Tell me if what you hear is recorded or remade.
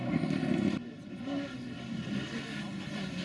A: recorded